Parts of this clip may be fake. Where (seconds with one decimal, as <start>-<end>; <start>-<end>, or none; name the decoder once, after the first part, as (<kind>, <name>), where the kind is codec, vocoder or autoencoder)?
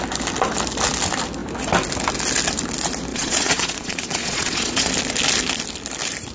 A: 3.1-4.9 (vocoder, Vocos)